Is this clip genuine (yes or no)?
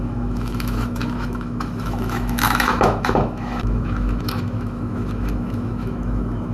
no